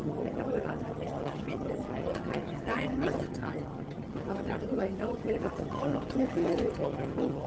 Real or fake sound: fake